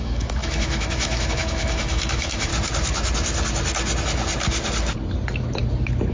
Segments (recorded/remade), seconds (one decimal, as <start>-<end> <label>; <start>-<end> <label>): 0.0-2.5 remade; 2.5-6.1 recorded